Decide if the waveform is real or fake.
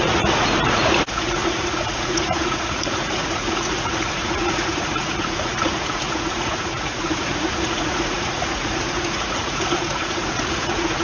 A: fake